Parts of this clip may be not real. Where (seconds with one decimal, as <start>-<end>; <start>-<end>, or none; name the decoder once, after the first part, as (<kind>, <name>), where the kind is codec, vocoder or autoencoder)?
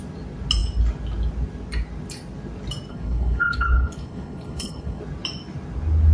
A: 2.9-5.0 (codec, HILCodec)